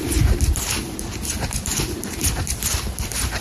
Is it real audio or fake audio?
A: fake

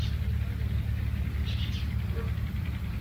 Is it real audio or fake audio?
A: real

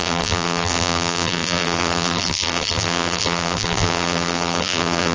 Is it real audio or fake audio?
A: fake